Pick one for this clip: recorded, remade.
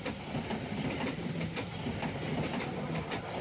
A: recorded